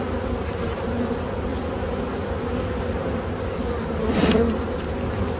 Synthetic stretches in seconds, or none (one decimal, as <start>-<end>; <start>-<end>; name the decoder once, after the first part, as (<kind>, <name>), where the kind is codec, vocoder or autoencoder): none